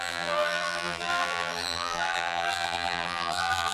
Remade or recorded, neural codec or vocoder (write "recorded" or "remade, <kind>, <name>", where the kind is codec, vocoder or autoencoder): remade, vocoder, BigVGAN v2